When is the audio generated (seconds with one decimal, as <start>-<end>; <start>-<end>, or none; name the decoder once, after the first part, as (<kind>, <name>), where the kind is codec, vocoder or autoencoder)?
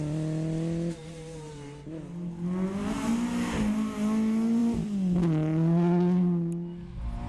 none